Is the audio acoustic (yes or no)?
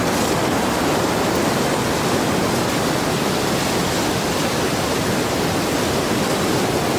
yes